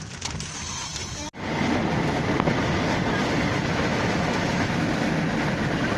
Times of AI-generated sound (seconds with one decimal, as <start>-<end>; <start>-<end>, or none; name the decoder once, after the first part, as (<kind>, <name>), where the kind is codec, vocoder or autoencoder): 3.9-4.9 (autoencoder, DAC-VAE)